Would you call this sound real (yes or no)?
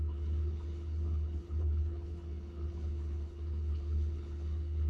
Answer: no